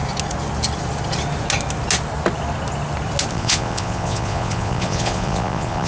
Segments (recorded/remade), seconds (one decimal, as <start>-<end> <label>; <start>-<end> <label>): 0.0-3.3 recorded; 3.3-5.9 remade